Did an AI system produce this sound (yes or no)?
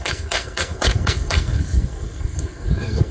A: yes